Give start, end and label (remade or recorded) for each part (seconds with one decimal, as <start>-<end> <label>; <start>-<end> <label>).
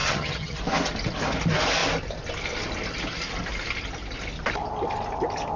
0.0-0.6 remade; 0.6-5.6 recorded